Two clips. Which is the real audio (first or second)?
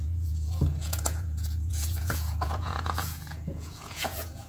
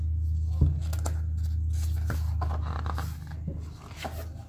second